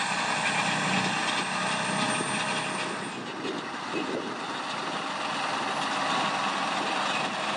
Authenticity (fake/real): real